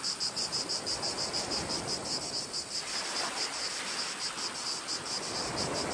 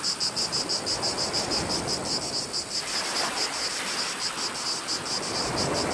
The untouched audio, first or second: second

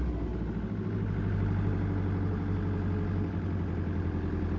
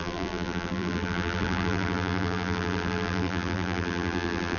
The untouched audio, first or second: first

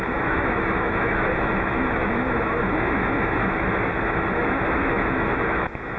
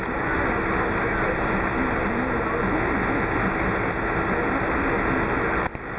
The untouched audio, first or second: second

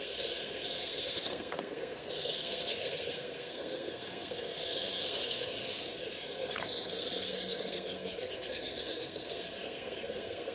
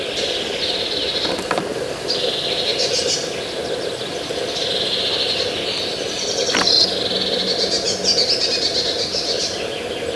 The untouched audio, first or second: second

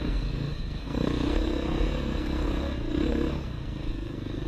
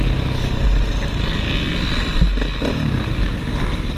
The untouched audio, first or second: second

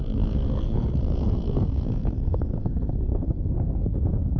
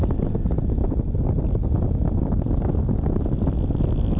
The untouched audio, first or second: second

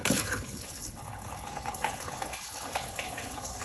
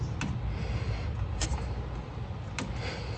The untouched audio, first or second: second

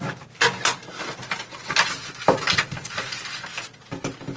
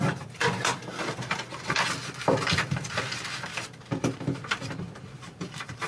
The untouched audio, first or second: first